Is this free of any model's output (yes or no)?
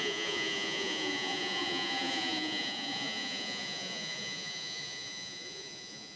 no